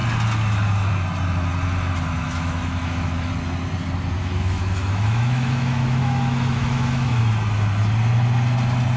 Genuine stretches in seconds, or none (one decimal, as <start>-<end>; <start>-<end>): 0.0-2.2; 3.3-4.2; 7.2-9.0